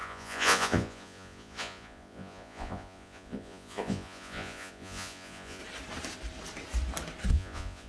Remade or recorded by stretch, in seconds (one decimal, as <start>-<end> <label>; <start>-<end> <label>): 0.0-5.6 remade; 5.6-7.3 recorded; 7.3-7.9 remade